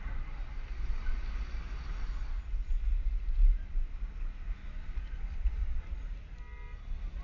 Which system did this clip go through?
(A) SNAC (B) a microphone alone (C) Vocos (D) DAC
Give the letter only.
B